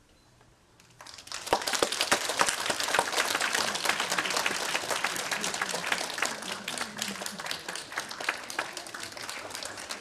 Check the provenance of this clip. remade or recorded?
remade